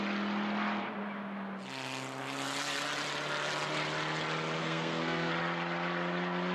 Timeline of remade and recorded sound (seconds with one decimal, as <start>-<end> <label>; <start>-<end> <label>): 0.0-4.6 recorded; 4.6-5.3 remade; 5.3-6.5 recorded